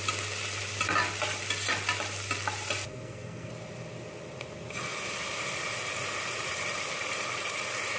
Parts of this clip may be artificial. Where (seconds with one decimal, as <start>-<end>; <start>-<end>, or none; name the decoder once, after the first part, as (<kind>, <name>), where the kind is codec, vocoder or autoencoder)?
2.9-3.5 (codec, SNAC)